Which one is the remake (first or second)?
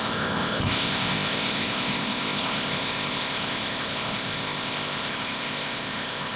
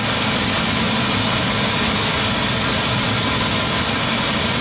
first